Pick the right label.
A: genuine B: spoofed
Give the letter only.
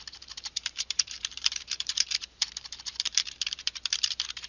B